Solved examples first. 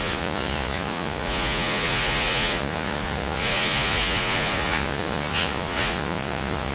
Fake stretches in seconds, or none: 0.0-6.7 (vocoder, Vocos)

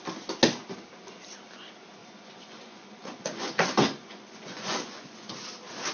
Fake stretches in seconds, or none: 2.0-5.3 (vocoder, Vocos)

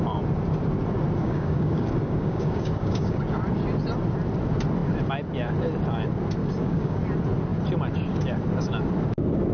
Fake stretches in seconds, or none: 1.2-3.2 (codec, DAC); 6.4-7.0

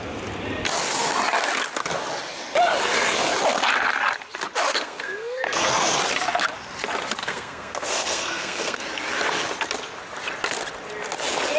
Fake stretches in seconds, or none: 4.7-5.6 (codec, SNAC); 7.2-8.8

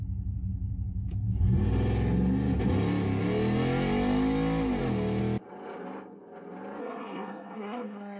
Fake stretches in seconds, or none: 6.8-8.2 (codec, SNAC)